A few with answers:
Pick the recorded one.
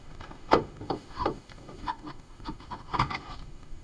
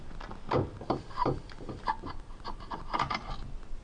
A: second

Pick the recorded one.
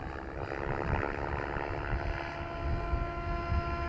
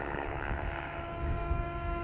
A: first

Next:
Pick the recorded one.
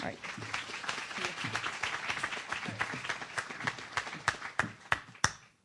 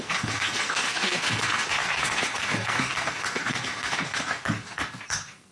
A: first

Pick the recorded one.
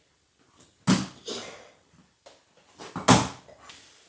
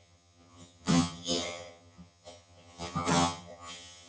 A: first